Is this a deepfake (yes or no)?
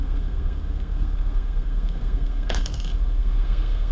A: yes